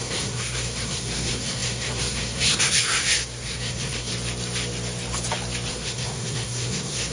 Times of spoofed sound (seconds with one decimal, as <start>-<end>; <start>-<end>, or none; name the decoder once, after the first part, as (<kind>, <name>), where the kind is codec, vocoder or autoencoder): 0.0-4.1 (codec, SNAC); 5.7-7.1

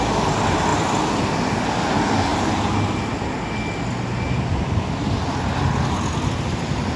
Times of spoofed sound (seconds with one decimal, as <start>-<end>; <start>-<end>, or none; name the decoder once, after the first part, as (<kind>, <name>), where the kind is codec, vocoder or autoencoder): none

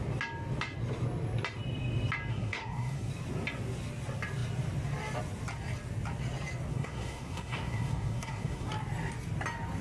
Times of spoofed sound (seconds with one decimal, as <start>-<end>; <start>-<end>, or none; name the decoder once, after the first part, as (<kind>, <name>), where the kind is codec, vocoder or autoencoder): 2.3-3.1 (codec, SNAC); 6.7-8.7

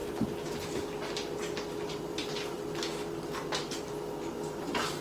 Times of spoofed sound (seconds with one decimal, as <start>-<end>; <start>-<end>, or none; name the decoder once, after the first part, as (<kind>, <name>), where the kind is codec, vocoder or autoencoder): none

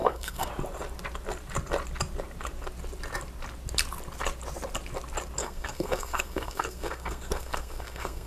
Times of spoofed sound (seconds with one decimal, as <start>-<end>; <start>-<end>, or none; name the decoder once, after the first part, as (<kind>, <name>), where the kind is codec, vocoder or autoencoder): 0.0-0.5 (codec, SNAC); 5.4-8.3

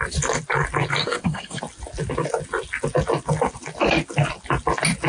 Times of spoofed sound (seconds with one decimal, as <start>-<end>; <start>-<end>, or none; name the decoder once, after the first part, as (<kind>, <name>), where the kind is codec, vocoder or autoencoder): 1.0-1.6 (codec, SNAC)

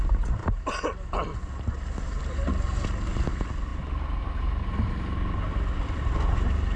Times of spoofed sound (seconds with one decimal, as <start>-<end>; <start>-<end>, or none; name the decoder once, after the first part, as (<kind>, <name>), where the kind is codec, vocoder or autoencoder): none

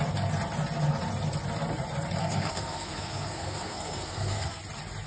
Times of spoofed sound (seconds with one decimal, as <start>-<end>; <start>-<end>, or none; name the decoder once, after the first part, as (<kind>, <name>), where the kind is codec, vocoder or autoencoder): 2.2-4.6 (codec, SNAC)